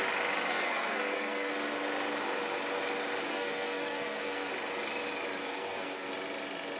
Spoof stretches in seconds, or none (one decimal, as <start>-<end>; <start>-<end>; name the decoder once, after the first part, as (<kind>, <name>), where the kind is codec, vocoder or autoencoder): 0.5-1.5 (codec, SNAC); 3.3-4.5; 5.4-6.1